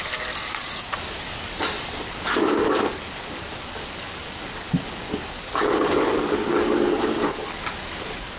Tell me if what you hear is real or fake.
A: fake